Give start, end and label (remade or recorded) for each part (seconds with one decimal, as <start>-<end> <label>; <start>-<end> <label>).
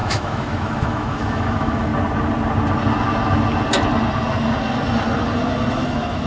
0.0-1.9 remade; 1.9-5.7 recorded; 5.7-6.3 remade